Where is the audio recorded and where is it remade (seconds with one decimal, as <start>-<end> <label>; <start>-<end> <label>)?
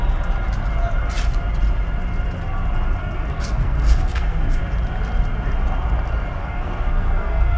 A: 0.0-3.0 recorded; 3.0-4.6 remade; 4.6-6.4 recorded; 6.4-7.6 remade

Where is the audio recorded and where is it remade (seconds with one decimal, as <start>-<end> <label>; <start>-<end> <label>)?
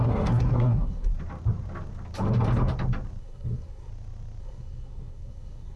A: 0.0-1.1 remade; 1.1-3.2 recorded; 3.2-3.9 remade; 3.9-4.4 recorded; 4.4-5.8 remade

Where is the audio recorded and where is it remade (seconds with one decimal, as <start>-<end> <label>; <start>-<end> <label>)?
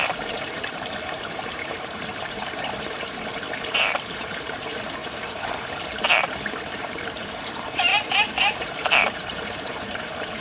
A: 0.0-7.9 remade; 7.9-8.6 recorded; 8.6-10.4 remade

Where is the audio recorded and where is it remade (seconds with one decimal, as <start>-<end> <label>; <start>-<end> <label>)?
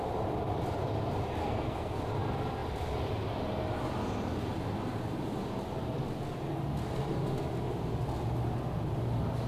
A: 0.0-1.4 recorded; 1.4-2.0 remade; 2.0-9.5 recorded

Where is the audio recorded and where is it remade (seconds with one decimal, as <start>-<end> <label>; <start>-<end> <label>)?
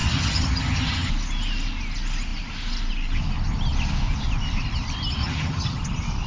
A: 0.0-1.1 remade; 1.1-5.2 recorded; 5.2-5.8 remade; 5.8-6.3 recorded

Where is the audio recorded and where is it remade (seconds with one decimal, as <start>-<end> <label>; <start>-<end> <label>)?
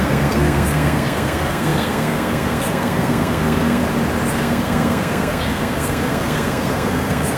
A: 0.0-3.8 remade; 3.8-4.3 recorded; 4.3-7.4 remade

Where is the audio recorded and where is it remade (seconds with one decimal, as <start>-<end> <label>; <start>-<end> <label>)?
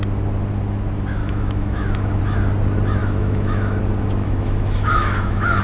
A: 0.0-1.2 recorded; 1.2-2.2 remade; 2.2-3.0 recorded; 3.0-3.8 remade; 3.8-4.2 recorded; 4.2-5.6 remade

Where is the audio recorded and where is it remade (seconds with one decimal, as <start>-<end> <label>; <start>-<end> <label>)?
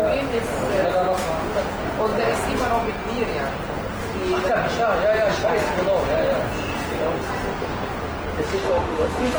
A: 0.0-8.6 recorded; 8.6-9.4 remade